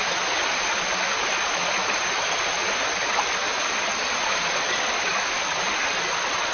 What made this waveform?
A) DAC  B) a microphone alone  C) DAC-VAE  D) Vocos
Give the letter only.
B